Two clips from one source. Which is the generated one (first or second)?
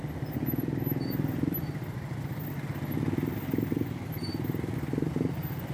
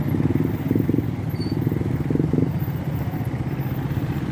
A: second